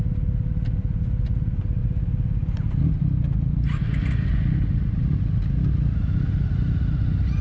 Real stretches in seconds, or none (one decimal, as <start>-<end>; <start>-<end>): 0.0-7.4